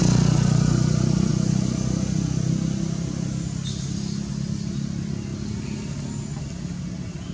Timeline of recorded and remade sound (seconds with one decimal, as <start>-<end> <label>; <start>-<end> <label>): 0.0-7.3 recorded